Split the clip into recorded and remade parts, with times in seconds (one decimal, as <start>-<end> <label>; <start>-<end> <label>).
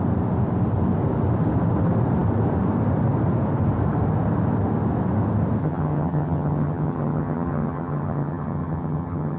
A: 0.0-5.6 recorded; 5.6-9.4 remade